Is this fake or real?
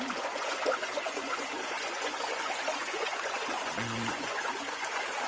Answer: fake